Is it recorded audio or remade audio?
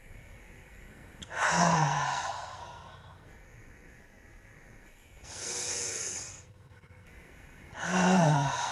remade